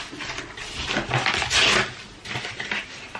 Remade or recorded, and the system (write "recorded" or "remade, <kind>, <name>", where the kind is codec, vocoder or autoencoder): recorded